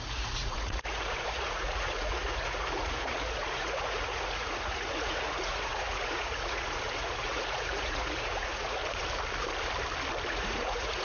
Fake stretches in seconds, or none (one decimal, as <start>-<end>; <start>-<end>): 0.0-8.8; 10.3-11.0